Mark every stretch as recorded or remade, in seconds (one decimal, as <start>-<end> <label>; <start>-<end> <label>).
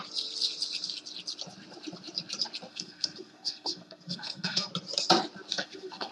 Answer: 0.0-2.7 recorded; 2.7-4.7 remade; 4.7-5.5 recorded; 5.5-6.1 remade